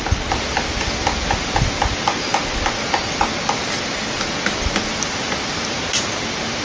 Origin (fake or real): real